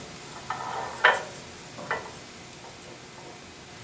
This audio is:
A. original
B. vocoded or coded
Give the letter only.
A